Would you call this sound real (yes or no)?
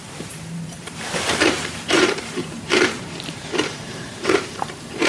no